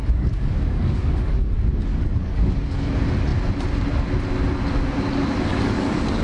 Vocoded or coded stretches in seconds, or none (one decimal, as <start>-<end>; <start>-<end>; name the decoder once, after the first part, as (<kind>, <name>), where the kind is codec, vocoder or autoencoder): 0.0-1.5 (codec, DAC); 1.9-2.9; 5.5-6.2